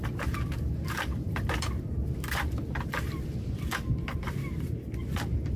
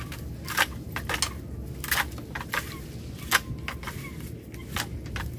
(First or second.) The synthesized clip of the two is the first